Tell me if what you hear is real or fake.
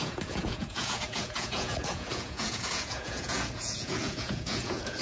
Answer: fake